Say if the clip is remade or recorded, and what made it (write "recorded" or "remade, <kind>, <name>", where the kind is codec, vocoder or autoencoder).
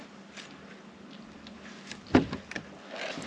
recorded